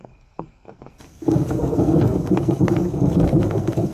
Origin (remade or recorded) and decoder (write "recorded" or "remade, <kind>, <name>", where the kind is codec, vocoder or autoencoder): remade, codec, SNAC